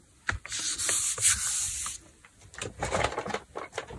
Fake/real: real